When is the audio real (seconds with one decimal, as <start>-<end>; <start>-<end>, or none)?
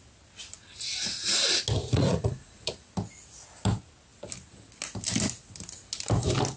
0.0-1.8; 2.7-6.6